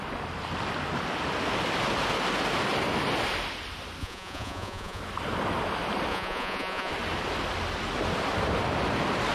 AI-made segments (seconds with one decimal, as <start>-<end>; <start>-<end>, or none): 4.0-5.0; 6.1-6.9